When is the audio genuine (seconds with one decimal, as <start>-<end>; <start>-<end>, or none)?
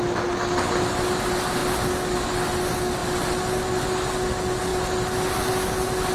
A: 0.0-6.1